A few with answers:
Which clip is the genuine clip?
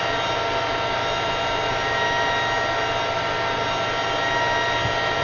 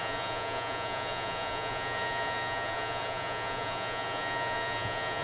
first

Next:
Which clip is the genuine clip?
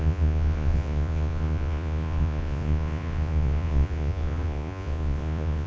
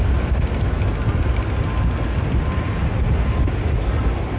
second